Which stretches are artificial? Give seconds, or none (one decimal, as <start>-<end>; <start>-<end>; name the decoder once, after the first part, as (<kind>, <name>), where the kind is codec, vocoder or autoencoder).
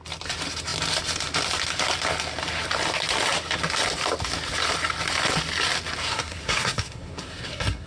6.0-7.9 (codec, SNAC)